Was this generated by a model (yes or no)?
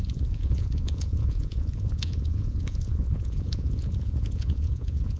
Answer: yes